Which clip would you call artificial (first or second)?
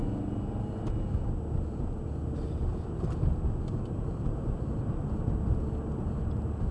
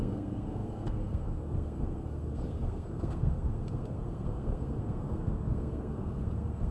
second